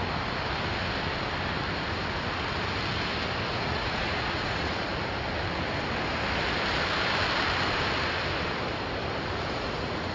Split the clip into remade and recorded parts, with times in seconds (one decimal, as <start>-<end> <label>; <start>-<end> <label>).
0.0-3.5 recorded; 3.5-4.9 remade; 4.9-9.5 recorded; 9.5-10.1 remade